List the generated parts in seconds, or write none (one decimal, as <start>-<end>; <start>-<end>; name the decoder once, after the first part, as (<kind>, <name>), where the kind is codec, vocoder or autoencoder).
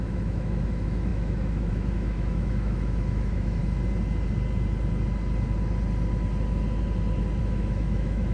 0.0-3.6 (autoencoder, DAC-VAE); 7.4-8.3